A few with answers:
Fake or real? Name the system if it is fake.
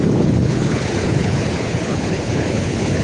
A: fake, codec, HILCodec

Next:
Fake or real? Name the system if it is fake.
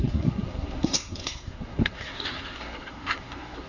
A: fake, codec, SNAC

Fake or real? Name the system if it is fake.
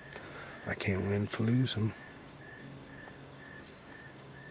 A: fake, codec, DAC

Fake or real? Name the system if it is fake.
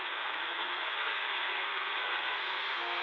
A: fake, codec, SNAC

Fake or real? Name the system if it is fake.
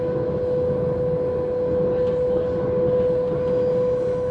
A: real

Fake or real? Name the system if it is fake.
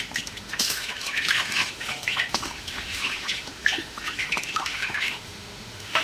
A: fake, autoencoder, DAC-VAE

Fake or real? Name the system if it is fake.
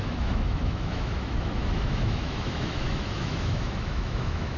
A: fake, autoencoder, DAC-VAE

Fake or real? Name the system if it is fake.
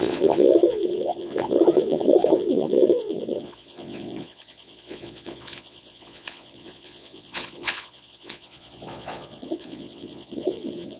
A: fake, vocoder, Vocos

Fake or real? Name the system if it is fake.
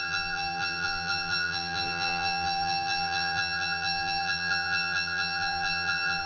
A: fake, vocoder, BigVGAN v2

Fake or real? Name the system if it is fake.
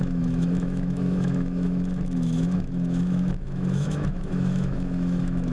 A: fake, autoencoder, DAC-VAE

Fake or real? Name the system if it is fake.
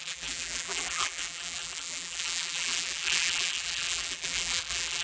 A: fake, vocoder, BigVGAN v2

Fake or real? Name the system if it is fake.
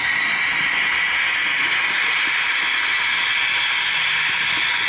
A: real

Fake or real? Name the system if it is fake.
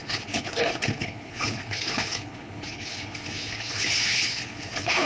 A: fake, codec, HILCodec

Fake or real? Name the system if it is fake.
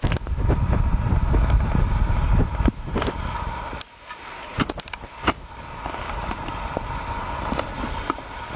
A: real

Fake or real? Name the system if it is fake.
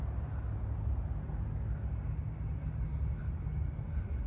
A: real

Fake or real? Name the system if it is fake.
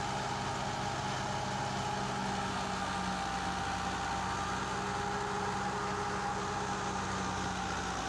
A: real